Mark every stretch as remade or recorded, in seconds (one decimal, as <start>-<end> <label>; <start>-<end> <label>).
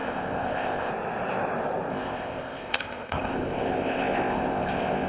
0.0-0.9 remade; 0.9-1.9 recorded; 1.9-5.1 remade